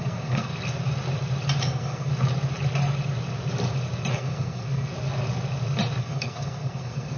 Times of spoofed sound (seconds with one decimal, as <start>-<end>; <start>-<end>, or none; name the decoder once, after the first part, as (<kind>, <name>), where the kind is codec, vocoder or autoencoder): 0.0-0.5 (codec, SNAC); 1.6-2.1; 4.1-4.9; 6.0-7.2

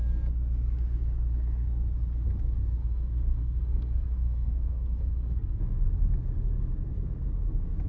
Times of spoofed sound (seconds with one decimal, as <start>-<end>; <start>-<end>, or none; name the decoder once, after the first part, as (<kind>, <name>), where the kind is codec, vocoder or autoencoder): 2.8-5.6 (codec, SNAC)

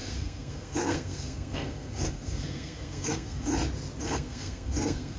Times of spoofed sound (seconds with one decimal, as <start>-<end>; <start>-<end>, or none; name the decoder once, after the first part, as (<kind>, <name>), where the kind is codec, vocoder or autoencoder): 0.0-3.5 (codec, SNAC); 4.0-5.2

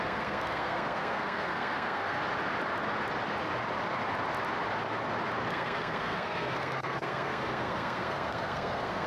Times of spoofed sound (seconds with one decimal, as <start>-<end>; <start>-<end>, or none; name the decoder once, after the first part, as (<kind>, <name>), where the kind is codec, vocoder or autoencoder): 0.0-2.2 (codec, SNAC); 5.5-9.1

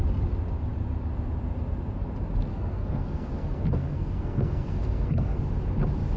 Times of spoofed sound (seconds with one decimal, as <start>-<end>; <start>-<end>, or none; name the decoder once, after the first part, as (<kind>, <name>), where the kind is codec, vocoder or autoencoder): 2.5-5.4 (codec, SNAC)